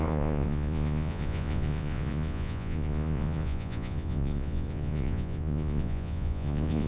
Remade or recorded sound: remade